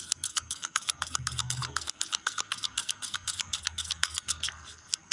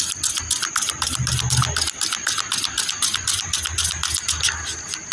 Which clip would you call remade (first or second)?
first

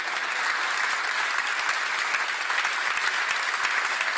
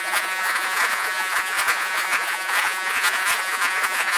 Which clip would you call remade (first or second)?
second